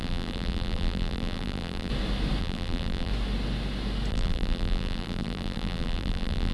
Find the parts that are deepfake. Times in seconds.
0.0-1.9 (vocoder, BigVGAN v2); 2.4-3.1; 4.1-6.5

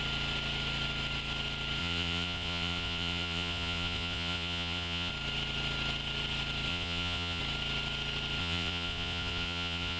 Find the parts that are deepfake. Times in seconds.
1.8-5.1 (vocoder, Vocos); 6.7-7.4; 8.4-10.0